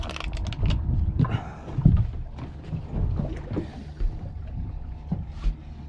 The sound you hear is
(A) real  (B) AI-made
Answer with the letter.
A